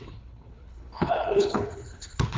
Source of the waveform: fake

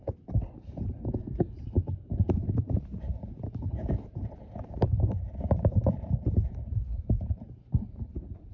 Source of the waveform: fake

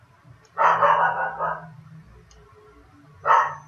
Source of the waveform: real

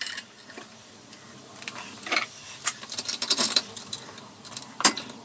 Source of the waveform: fake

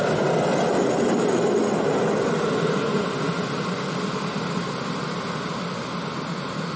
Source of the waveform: real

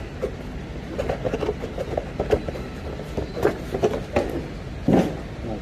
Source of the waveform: real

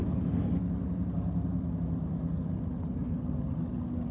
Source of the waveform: real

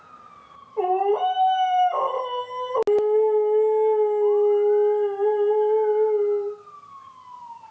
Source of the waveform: real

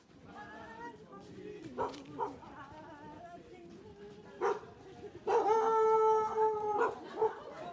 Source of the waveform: real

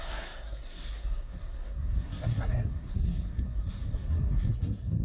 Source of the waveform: fake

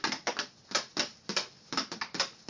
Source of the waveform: real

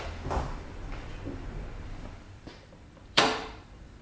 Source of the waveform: fake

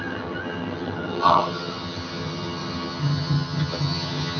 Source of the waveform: fake